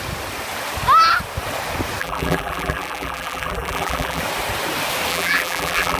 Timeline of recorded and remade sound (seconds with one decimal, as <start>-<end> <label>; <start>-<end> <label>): 0.0-2.0 recorded; 2.0-4.2 remade; 4.2-5.1 recorded; 5.1-6.0 remade